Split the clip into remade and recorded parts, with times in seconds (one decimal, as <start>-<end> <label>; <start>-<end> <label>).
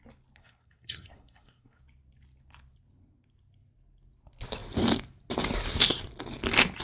0.0-0.4 recorded; 0.4-1.8 remade; 1.8-6.8 recorded